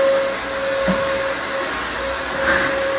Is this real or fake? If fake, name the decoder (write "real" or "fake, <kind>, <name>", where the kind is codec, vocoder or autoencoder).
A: real